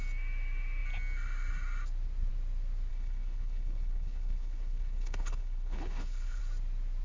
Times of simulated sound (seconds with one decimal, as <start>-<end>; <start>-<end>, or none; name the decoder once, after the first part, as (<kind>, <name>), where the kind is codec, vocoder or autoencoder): 2.9-6.4 (codec, HILCodec)